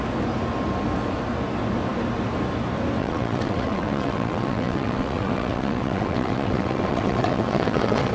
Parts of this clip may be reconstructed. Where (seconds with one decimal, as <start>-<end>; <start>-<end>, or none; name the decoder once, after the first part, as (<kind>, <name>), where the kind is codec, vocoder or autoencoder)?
3.0-8.1 (vocoder, WaveNeXt)